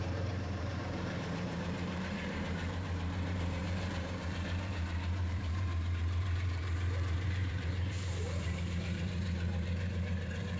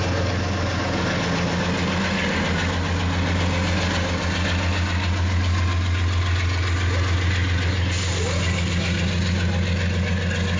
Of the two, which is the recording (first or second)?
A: second